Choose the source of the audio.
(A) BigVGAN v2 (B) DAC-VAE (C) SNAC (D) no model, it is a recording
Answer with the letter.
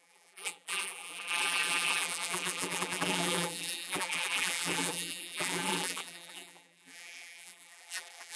A